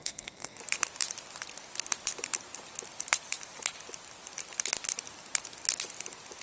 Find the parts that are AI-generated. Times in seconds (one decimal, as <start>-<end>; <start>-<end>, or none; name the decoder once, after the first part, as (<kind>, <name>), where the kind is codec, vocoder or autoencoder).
0.0-0.6 (codec, SNAC)